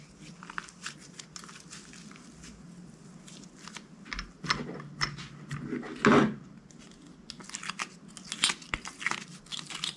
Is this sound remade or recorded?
recorded